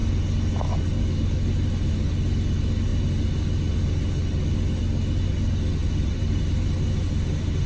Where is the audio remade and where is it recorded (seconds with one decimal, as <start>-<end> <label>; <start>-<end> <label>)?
0.0-5.8 recorded; 5.8-6.5 remade; 6.5-7.7 recorded